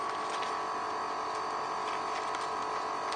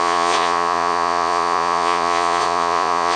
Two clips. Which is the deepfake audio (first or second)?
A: second